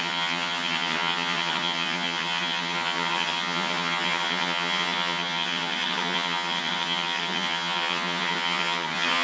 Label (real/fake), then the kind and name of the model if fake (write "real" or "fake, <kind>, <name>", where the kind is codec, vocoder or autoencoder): fake, vocoder, HiFi-GAN